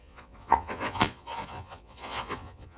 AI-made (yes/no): yes